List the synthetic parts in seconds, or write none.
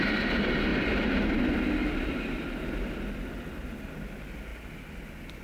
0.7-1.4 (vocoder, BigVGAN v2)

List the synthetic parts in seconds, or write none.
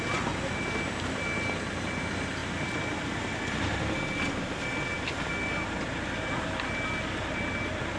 none